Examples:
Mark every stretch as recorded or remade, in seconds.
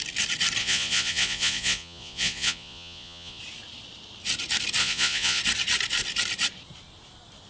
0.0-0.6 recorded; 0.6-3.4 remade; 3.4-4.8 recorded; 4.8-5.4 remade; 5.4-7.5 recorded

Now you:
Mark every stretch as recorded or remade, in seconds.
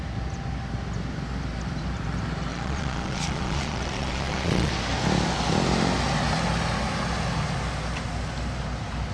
0.0-2.5 recorded; 2.5-4.7 remade; 4.7-9.1 recorded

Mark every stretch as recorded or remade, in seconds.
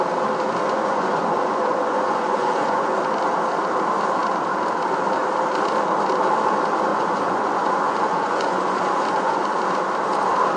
0.0-0.6 recorded; 0.6-3.0 remade; 3.0-6.9 recorded; 6.9-9.6 remade; 9.6-10.6 recorded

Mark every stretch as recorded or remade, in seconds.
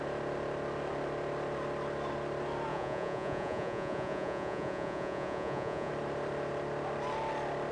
0.0-2.7 recorded; 2.7-5.9 remade; 5.9-7.7 recorded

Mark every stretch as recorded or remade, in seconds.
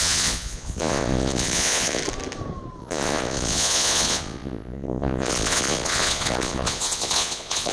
0.0-2.0 remade; 2.0-2.8 recorded; 2.8-7.7 remade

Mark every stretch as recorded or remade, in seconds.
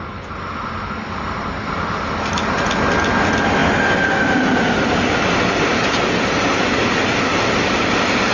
0.0-8.3 recorded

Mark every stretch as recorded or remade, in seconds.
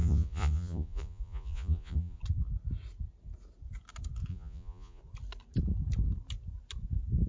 0.0-2.2 remade; 2.2-4.3 recorded; 4.3-5.0 remade; 5.0-7.3 recorded